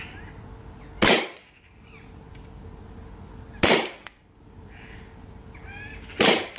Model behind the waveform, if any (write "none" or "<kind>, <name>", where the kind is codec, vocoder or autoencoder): none